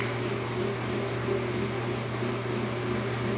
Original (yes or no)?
yes